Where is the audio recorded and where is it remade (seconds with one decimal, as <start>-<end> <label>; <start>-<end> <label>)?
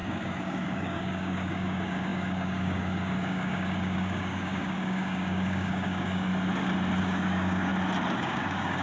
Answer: 0.0-6.3 remade; 6.3-7.0 recorded; 7.0-7.7 remade; 7.7-8.2 recorded; 8.2-8.8 remade